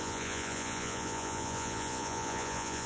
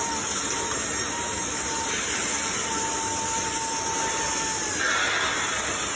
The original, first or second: second